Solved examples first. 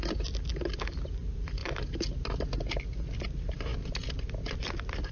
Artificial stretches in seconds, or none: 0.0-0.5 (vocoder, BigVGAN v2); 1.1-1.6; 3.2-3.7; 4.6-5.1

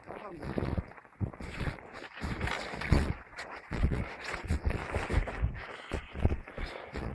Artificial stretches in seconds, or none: 0.0-1.8 (vocoder, Vocos); 2.8-4.8; 5.9-7.1

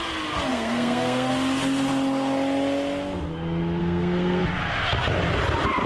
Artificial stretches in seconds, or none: 0.5-1.3 (codec, SNAC); 3.8-4.4

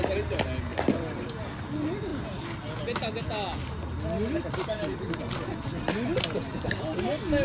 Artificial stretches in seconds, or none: none

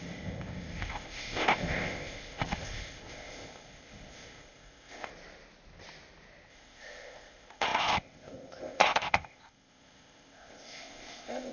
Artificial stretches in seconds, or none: 0.0-5.1 (codec, ZipCodec); 6.5-11.5

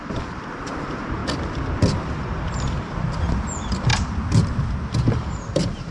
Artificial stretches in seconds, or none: 0.0-1.2 (vocoder, BigVGAN v2); 1.8-3.9; 4.9-5.9

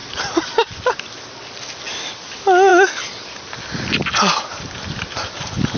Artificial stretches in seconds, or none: none

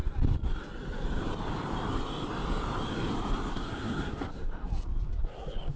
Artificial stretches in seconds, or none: 3.5-4.7 (codec, SNAC); 5.2-5.8